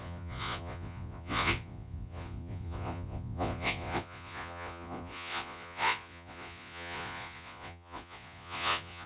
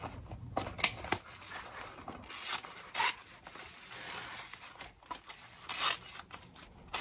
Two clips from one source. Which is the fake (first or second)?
first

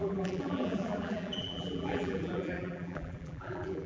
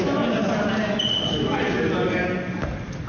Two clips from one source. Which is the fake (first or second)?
first